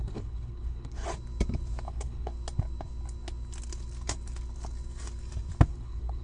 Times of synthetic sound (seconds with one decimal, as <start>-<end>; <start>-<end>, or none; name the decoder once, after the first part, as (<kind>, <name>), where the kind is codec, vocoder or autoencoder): 0.0-1.0 (codec, HILCodec); 1.9-2.3; 5.7-6.2